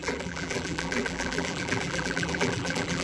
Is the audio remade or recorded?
remade